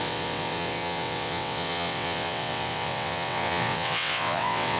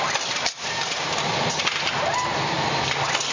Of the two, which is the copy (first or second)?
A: first